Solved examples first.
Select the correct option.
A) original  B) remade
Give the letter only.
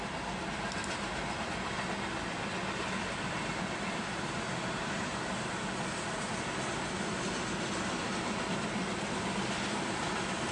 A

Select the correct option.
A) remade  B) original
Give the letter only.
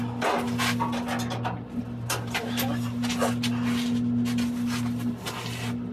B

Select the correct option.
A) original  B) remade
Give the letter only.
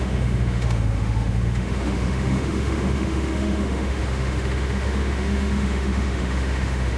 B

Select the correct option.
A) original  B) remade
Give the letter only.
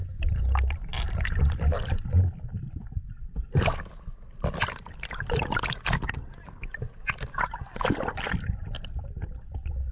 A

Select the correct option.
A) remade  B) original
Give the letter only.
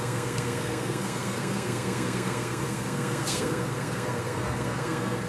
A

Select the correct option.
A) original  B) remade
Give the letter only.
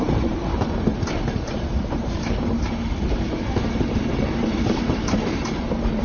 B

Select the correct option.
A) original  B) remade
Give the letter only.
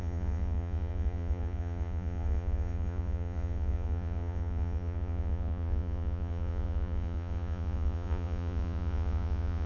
B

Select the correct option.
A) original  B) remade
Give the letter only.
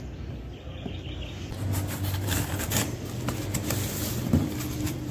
A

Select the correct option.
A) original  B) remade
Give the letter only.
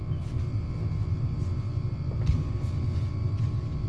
A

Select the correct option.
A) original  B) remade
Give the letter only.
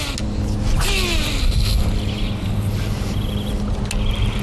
A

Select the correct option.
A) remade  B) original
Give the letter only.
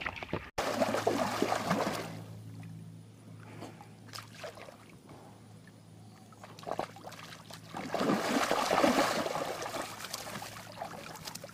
B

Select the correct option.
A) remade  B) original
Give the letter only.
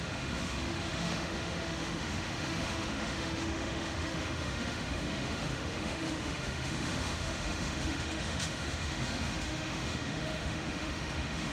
A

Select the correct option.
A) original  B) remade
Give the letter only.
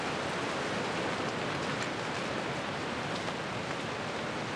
A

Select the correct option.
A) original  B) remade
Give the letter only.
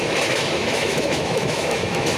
B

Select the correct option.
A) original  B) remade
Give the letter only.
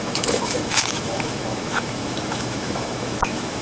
B